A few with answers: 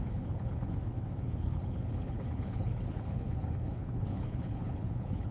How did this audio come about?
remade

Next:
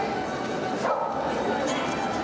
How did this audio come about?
recorded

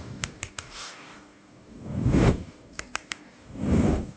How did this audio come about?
remade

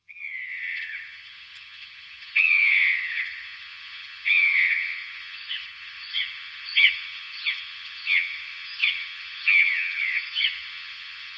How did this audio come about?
remade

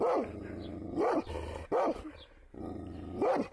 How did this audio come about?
recorded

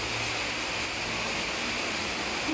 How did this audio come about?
recorded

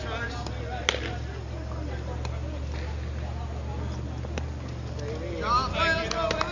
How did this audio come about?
recorded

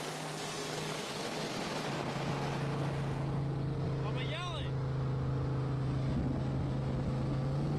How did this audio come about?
recorded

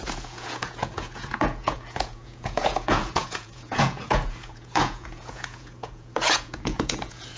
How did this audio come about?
remade